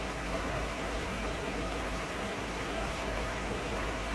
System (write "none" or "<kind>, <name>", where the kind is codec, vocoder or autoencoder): codec, SNAC